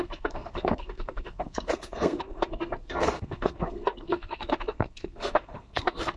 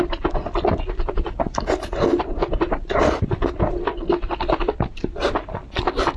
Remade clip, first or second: first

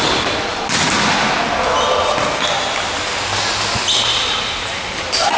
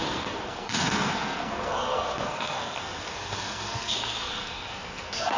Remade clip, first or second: second